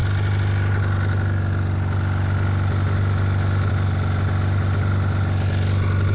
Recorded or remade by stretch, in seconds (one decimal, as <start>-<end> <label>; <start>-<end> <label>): 0.0-6.1 recorded